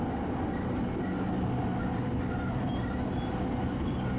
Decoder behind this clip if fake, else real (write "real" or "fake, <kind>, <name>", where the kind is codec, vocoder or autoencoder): real